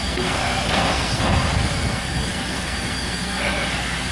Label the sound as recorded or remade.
remade